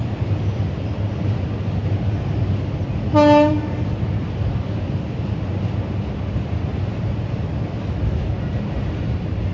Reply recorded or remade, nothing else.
recorded